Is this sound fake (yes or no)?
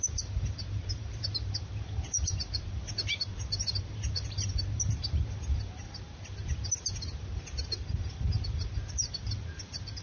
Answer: yes